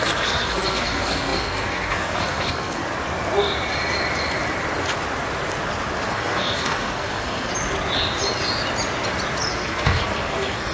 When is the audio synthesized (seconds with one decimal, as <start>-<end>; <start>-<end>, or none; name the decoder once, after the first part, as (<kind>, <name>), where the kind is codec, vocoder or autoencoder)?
0.0-2.8 (codec, SNAC); 6.1-7.5; 9.5-10.7